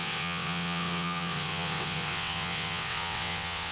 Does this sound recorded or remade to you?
remade